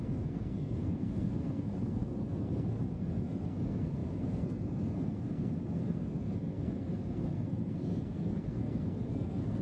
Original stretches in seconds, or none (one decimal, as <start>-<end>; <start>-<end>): none